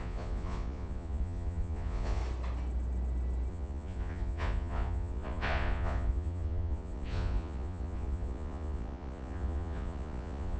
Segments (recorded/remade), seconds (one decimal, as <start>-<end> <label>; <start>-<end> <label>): 0.0-2.2 remade; 2.2-3.5 recorded; 3.5-10.6 remade